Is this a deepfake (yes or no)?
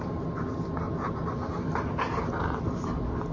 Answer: no